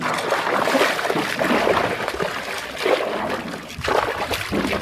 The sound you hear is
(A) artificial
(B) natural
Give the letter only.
B